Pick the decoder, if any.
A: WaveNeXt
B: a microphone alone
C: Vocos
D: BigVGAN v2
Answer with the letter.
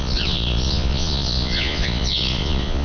C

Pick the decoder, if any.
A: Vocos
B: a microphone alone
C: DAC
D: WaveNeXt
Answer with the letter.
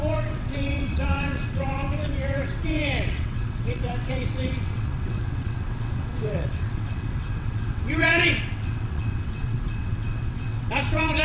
D